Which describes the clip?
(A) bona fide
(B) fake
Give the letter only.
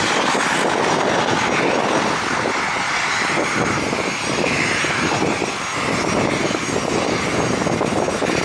A